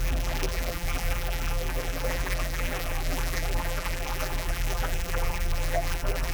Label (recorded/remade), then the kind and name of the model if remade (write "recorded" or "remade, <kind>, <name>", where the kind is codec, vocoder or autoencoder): remade, vocoder, BigVGAN v2